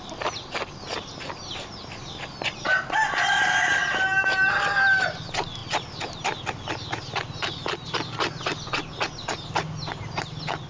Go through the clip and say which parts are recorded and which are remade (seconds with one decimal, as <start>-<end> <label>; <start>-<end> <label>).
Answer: 0.0-10.7 recorded

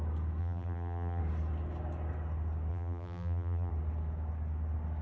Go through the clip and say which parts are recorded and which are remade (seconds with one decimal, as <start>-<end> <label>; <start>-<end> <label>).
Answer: 0.0-0.4 recorded; 0.4-1.2 remade; 1.2-2.7 recorded; 2.7-3.7 remade; 3.7-5.0 recorded

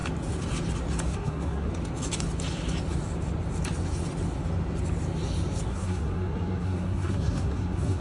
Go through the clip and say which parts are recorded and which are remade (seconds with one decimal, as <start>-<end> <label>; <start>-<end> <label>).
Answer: 0.0-1.1 recorded; 1.1-1.7 remade; 1.7-5.7 recorded; 5.7-8.0 remade

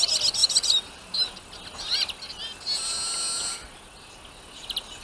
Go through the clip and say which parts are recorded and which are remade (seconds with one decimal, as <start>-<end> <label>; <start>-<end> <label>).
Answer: 0.0-5.0 recorded

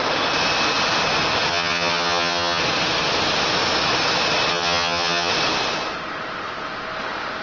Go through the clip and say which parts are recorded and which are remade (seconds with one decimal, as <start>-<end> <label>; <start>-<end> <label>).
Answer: 0.0-1.5 recorded; 1.5-2.6 remade; 2.6-4.5 recorded; 4.5-5.3 remade; 5.3-7.4 recorded

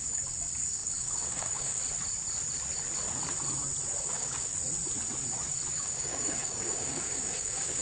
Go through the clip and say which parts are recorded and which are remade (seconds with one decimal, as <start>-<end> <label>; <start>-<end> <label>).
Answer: 0.0-1.8 remade; 1.8-4.0 recorded; 4.0-4.5 remade; 4.5-5.7 recorded; 5.7-7.8 remade

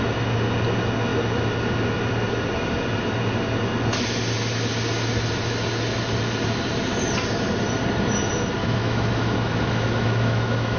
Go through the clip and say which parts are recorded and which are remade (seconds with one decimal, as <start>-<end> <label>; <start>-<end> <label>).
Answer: 0.0-8.6 recorded; 8.6-10.8 remade

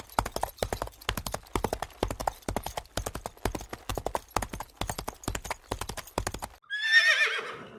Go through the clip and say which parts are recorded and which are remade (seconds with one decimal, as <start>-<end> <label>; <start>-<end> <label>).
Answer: 0.0-7.8 recorded